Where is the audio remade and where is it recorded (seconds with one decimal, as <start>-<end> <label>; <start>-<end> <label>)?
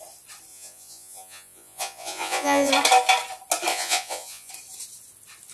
0.0-0.5 recorded; 0.5-2.7 remade; 2.7-3.7 recorded; 3.7-4.5 remade; 4.5-5.5 recorded